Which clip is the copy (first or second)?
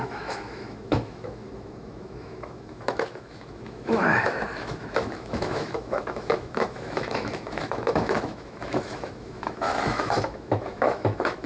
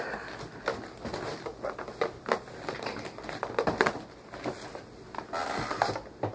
first